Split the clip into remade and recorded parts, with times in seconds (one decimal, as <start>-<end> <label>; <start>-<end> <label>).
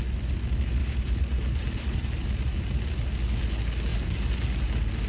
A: 0.0-0.8 recorded; 0.8-2.6 remade; 2.6-3.9 recorded; 3.9-5.1 remade